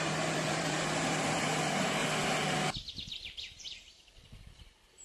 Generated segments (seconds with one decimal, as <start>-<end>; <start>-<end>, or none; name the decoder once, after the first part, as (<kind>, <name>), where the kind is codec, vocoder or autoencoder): 0.0-2.0 (vocoder, BigVGAN v2); 2.9-5.0